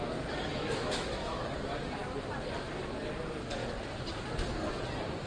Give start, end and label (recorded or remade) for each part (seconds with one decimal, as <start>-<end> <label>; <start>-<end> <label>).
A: 0.0-0.5 recorded; 0.5-1.5 remade; 1.5-5.3 recorded